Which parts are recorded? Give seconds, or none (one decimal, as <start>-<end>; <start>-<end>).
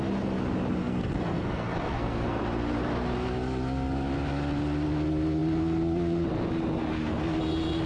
0.0-0.8; 2.4-7.9